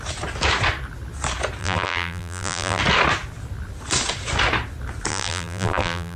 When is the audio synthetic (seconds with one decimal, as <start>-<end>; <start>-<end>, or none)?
1.6-2.8; 5.1-6.2